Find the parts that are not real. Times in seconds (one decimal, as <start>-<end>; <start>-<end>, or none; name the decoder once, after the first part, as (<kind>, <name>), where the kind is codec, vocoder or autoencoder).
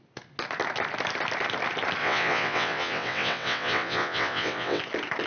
2.0-4.8 (vocoder, WaveNeXt)